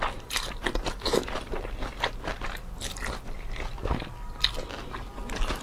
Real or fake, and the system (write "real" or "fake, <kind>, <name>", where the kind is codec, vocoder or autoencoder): real